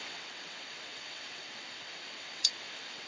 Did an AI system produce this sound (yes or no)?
yes